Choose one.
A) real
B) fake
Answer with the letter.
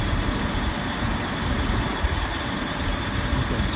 B